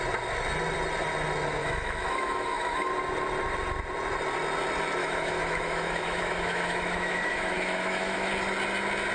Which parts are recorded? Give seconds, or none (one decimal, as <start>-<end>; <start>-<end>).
0.0-1.6; 2.9-5.0; 8.3-9.1